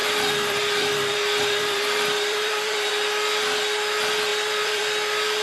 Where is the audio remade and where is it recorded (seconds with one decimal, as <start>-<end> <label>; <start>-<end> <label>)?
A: 0.0-2.9 remade; 2.9-4.3 recorded; 4.3-4.8 remade; 4.8-5.4 recorded